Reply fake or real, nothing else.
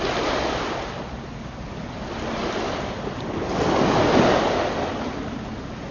real